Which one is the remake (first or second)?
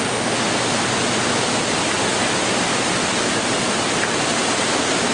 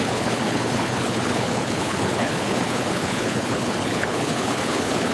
second